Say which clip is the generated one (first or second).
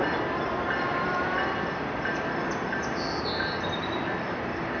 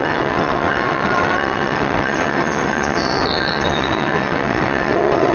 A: second